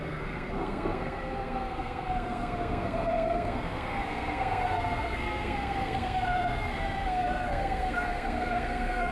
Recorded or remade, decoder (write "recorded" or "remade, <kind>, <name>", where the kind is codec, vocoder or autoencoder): remade, codec, SNAC